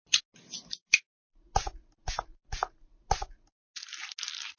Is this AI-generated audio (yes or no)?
no